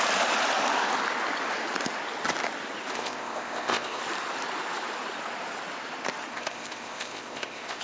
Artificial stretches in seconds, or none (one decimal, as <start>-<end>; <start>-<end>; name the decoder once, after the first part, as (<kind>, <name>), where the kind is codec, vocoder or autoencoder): 2.9-4.0 (codec, ZipCodec); 6.3-7.8